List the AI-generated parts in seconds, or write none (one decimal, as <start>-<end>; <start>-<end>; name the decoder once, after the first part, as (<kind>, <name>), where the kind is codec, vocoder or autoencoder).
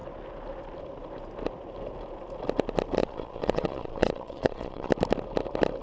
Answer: 3.0-4.9 (vocoder, Vocos)